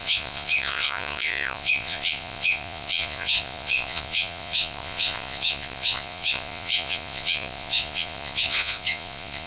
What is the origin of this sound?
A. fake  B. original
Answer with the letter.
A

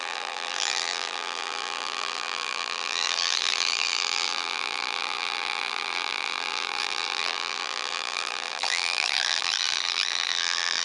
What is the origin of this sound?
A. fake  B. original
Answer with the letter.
A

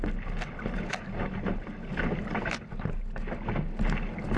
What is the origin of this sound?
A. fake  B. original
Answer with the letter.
B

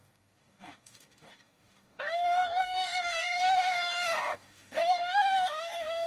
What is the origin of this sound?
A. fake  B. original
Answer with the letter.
A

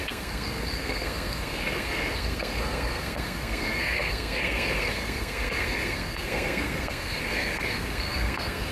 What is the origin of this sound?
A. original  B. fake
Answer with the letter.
B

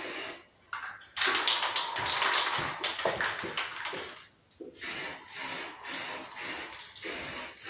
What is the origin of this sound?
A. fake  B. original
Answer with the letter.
B